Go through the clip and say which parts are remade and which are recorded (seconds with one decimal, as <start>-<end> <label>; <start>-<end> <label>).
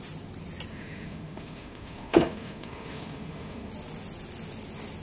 0.0-0.7 recorded; 0.7-3.7 remade; 3.7-5.0 recorded